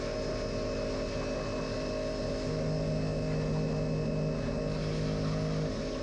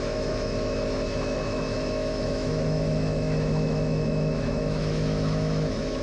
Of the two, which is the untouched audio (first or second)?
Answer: first